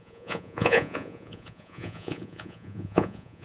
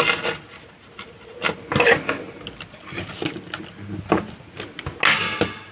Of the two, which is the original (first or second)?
second